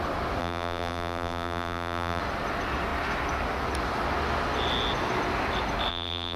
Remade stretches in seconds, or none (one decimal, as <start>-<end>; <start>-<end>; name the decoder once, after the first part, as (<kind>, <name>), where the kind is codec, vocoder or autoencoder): 0.4-2.2 (vocoder, BigVGAN v2); 5.9-6.4